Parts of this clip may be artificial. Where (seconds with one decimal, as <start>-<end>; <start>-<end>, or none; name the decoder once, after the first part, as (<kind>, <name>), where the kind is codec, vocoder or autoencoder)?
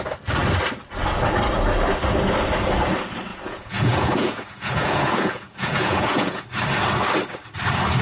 3.3-6.5 (vocoder, Vocos)